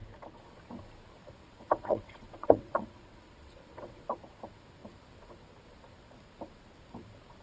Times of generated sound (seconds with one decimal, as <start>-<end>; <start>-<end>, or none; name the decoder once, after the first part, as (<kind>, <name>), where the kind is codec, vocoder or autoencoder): 1.4-4.0 (vocoder, WaveNeXt)